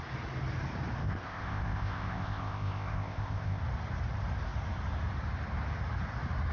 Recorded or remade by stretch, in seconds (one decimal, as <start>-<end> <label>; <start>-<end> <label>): 0.0-1.0 recorded; 1.0-3.6 remade; 3.6-6.5 recorded

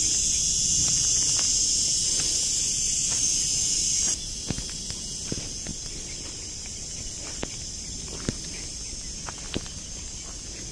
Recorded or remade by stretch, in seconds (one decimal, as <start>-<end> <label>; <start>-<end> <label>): 0.0-5.7 recorded; 5.7-8.2 remade; 8.2-10.7 recorded

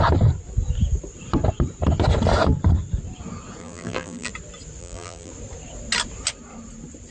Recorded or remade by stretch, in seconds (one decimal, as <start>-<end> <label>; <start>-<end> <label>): 0.0-3.6 recorded; 3.6-4.3 remade; 4.3-4.8 recorded; 4.8-5.3 remade; 5.3-7.1 recorded